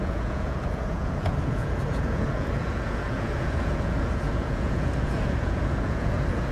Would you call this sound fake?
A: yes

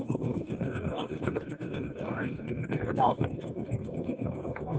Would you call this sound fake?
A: yes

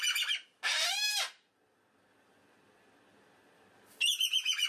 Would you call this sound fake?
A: no